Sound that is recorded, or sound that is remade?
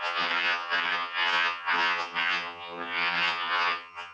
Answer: remade